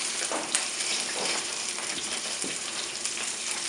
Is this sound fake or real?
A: fake